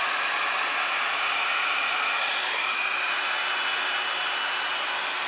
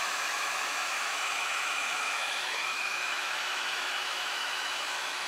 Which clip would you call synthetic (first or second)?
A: second